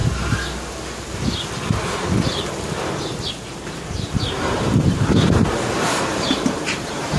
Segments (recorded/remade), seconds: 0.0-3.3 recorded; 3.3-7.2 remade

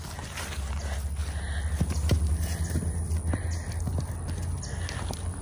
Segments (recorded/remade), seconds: 0.0-5.4 recorded

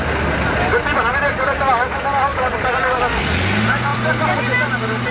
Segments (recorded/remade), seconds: 0.0-2.3 recorded; 2.3-3.0 remade; 3.0-3.9 recorded; 3.9-4.4 remade; 4.4-5.1 recorded

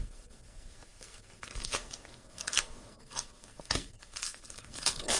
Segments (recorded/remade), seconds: 0.0-5.2 remade

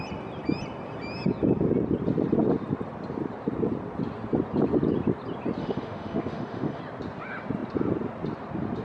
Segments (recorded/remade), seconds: 0.0-5.6 recorded; 5.6-6.8 remade; 6.8-8.8 recorded

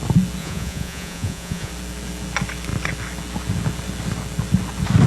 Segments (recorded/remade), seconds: 0.0-0.4 recorded; 0.4-1.7 remade; 1.7-5.1 recorded